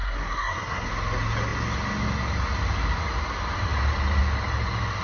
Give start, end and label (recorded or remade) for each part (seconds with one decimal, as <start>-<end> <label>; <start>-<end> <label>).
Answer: 0.0-0.9 remade; 0.9-5.0 recorded